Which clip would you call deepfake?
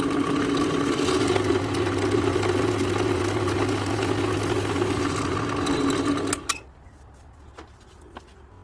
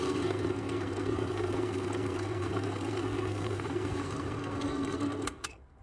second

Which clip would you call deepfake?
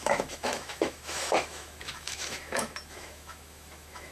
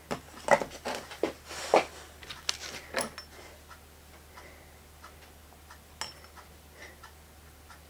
first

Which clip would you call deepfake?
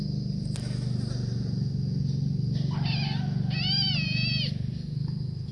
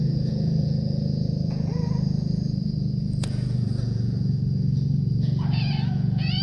second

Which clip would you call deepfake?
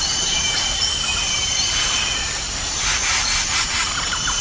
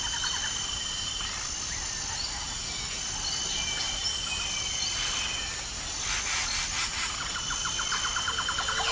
first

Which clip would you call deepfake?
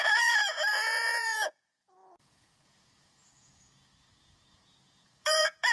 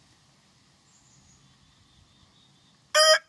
first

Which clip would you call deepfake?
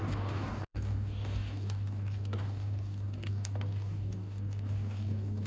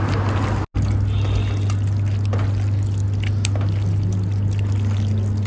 first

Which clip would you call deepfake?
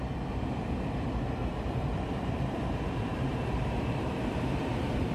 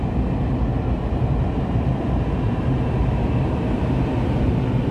first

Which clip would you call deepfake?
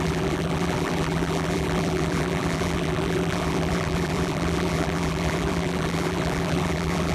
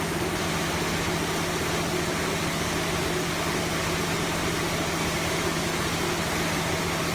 first